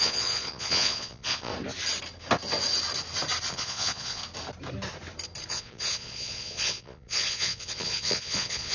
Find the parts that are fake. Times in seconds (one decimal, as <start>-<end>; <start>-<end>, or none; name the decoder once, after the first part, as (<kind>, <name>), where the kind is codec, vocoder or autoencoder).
0.0-1.5 (vocoder, Vocos); 3.5-4.2; 5.5-8.7